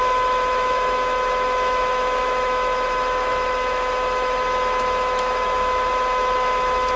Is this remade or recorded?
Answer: remade